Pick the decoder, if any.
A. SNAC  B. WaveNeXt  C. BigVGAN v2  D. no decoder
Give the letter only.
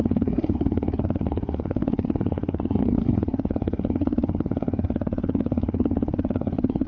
A